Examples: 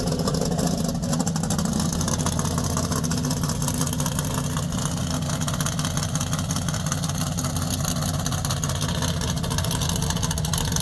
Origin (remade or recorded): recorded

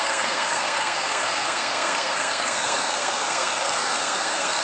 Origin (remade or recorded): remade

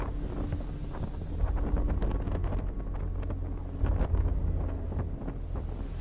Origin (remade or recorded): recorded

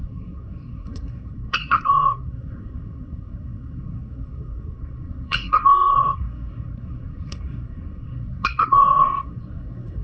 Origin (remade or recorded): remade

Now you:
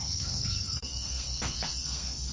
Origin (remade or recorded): remade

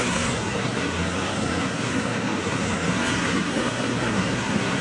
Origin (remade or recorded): remade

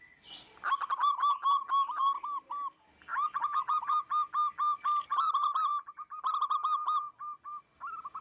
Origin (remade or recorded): recorded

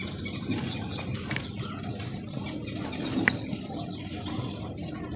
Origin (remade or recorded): recorded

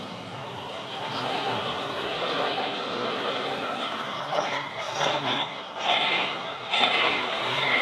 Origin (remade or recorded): remade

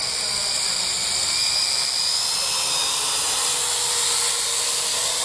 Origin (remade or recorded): recorded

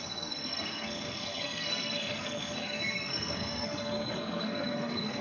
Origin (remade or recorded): remade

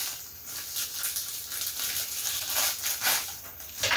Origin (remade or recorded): recorded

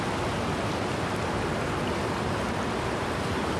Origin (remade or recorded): recorded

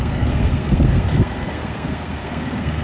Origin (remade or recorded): remade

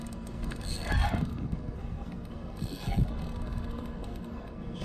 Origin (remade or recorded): remade